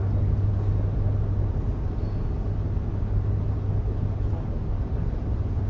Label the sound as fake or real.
real